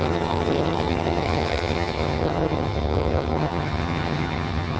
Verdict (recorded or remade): remade